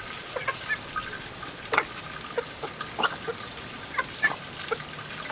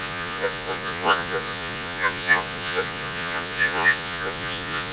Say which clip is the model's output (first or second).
second